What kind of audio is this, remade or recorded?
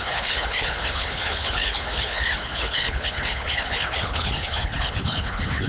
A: remade